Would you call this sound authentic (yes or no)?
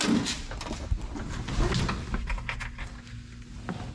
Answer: yes